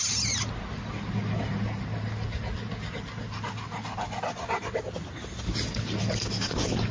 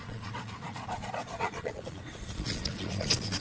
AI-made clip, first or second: second